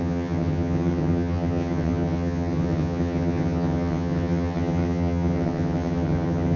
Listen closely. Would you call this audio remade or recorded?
remade